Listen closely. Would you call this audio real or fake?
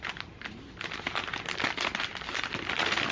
real